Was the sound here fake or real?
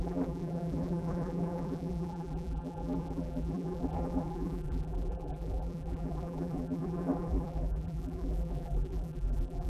fake